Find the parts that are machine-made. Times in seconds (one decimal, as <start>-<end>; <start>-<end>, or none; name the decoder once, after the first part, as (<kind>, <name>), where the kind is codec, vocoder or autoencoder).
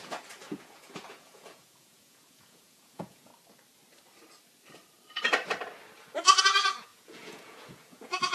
0.0-3.3 (vocoder, Vocos); 6.4-8.3